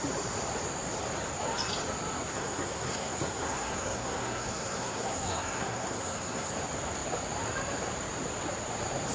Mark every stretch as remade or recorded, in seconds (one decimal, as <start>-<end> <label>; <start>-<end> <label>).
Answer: 0.0-2.3 recorded; 2.3-6.5 remade; 6.5-9.1 recorded